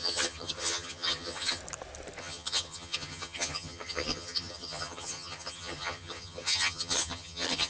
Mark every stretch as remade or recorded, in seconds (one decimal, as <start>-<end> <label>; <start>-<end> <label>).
0.0-1.6 remade; 1.6-2.2 recorded; 2.2-7.7 remade